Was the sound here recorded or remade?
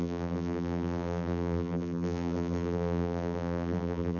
remade